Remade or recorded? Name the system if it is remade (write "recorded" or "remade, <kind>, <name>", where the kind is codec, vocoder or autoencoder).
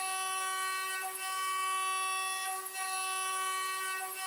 recorded